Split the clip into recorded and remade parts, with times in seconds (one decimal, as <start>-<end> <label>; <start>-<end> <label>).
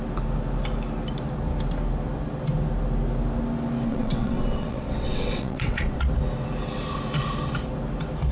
0.0-3.9 recorded; 3.9-6.0 remade; 6.0-8.3 recorded